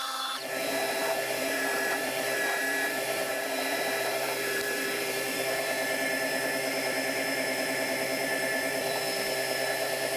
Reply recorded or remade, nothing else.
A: remade